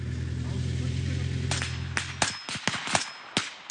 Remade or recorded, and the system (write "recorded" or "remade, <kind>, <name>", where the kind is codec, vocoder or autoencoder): recorded